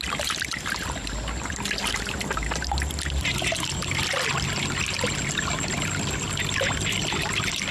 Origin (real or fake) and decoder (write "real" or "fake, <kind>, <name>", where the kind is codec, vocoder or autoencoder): real